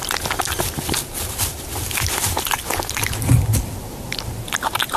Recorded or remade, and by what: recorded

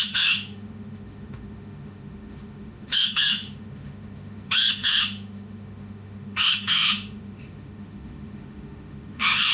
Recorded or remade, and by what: remade, autoencoder, DAC-VAE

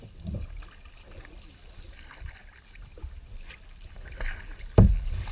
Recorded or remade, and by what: recorded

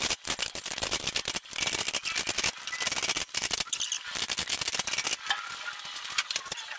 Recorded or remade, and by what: recorded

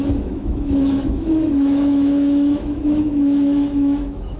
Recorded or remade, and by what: remade, autoencoder, DAC-VAE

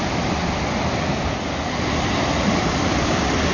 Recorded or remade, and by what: recorded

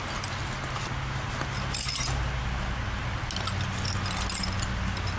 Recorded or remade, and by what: recorded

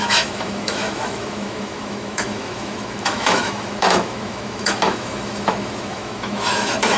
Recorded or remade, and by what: remade, autoencoder, DAC-VAE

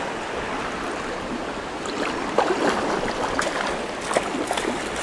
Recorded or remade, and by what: recorded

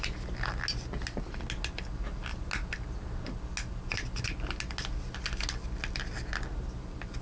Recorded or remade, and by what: recorded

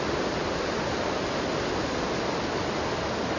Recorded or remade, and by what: recorded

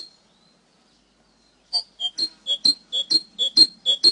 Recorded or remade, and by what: recorded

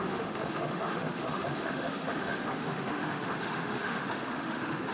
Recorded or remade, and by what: remade, autoencoder, DAC-VAE